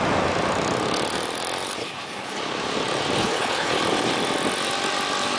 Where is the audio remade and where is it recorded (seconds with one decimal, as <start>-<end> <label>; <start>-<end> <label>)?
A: 0.0-1.8 recorded; 1.8-2.4 remade; 2.4-3.2 recorded; 3.2-3.8 remade; 3.8-5.4 recorded